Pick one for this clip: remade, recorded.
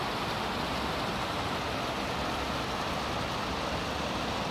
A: recorded